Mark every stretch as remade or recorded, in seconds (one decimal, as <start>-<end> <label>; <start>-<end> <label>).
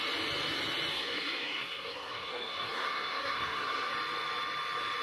0.0-0.9 recorded; 0.9-3.9 remade; 3.9-5.0 recorded